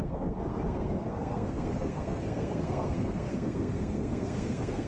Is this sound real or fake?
fake